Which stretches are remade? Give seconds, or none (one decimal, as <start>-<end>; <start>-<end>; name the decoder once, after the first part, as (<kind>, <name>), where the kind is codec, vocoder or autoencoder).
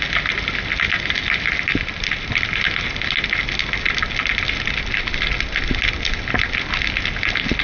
none